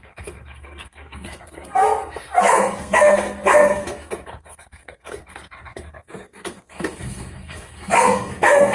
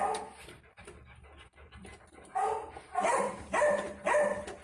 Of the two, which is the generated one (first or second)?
first